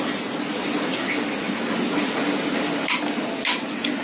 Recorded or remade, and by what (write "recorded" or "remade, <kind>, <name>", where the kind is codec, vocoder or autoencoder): recorded